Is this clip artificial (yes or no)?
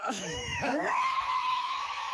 yes